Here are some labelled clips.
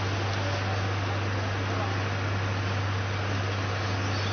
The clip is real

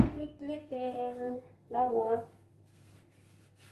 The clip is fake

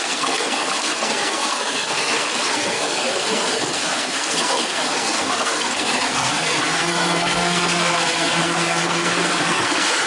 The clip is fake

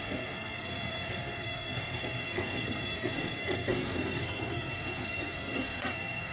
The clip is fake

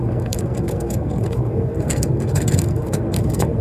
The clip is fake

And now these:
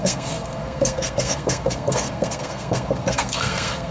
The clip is fake